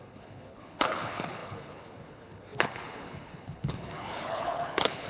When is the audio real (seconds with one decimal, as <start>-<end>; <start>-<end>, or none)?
none